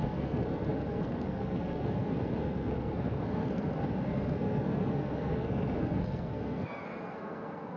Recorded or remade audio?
remade